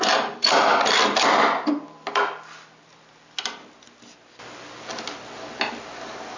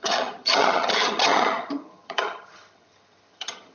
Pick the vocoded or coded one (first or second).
second